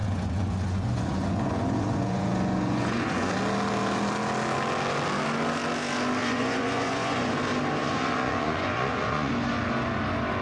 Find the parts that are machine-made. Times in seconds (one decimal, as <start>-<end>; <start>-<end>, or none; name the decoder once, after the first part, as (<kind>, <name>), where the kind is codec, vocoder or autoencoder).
0.0-3.3 (vocoder, Vocos); 6.2-7.3; 7.8-9.3